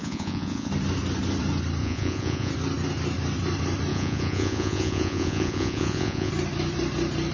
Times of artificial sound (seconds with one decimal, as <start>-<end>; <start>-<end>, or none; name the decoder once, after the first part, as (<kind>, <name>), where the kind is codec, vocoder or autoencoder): 0.0-0.7 (vocoder, Vocos); 1.8-2.5; 3.9-6.3

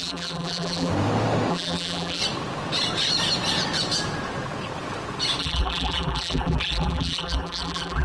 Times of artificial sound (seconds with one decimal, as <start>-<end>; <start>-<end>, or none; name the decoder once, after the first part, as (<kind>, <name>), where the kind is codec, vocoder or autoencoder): 0.0-0.9 (vocoder, BigVGAN v2); 1.5-2.2; 5.4-8.0

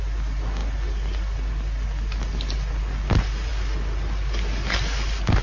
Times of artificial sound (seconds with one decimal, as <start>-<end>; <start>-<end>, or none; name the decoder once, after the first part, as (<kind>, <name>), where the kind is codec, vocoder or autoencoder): none

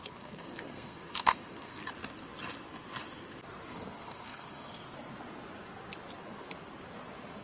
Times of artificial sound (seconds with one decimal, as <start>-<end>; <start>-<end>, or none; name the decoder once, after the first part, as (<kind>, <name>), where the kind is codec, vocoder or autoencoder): 0.0-1.8 (codec, SNAC); 3.7-4.8